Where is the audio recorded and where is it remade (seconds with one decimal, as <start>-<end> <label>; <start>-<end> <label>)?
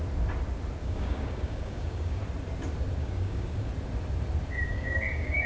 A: 0.0-0.8 recorded; 0.8-2.2 remade; 2.2-3.0 recorded; 3.0-3.7 remade; 3.7-4.7 recorded; 4.7-5.5 remade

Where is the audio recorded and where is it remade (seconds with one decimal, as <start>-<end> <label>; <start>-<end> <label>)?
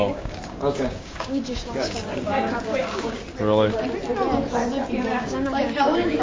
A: 0.0-3.2 remade; 3.2-5.1 recorded; 5.1-6.2 remade